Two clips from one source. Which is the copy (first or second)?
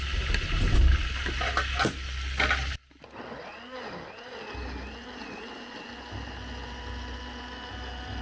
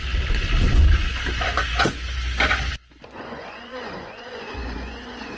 second